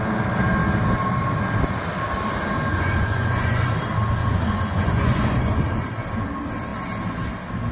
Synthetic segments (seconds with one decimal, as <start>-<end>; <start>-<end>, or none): 2.7-3.7; 4.2-5.5